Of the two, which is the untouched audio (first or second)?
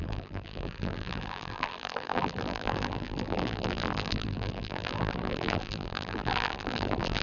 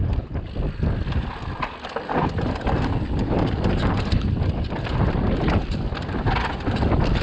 second